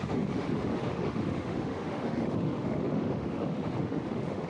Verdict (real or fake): fake